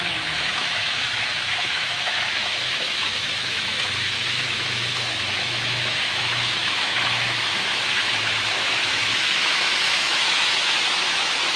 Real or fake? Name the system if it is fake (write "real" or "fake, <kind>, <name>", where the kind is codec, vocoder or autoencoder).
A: fake, autoencoder, DAC-VAE